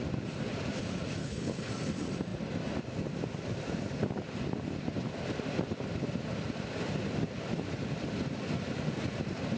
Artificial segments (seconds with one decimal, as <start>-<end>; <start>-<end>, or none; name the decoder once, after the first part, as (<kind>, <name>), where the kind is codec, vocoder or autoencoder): 1.2-1.7 (codec, HILCodec)